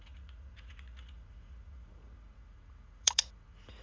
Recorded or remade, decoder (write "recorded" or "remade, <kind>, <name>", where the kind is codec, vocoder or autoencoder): remade, vocoder, Vocos